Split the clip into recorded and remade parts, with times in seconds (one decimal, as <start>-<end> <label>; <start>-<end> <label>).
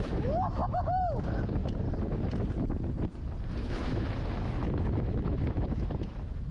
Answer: 0.0-0.6 remade; 0.6-1.2 recorded; 1.2-1.6 remade; 1.6-3.6 recorded; 3.6-6.5 remade